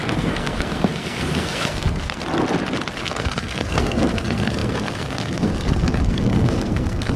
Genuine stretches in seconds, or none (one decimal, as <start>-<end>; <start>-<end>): 2.2-3.0